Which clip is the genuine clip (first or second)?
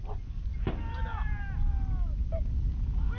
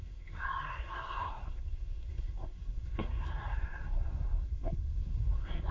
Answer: first